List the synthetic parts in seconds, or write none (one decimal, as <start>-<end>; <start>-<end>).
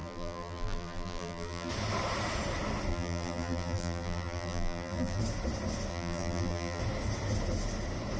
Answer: 0.0-1.7; 2.9-5.2; 5.9-6.8